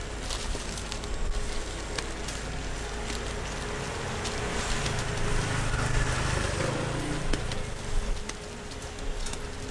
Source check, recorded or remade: recorded